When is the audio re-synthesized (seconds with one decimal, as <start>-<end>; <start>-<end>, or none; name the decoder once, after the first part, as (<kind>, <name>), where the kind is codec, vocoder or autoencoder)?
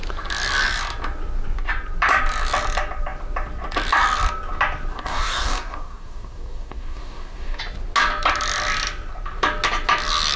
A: 4.9-7.6 (codec, DAC)